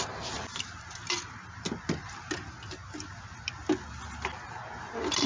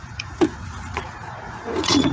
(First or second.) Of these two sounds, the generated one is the second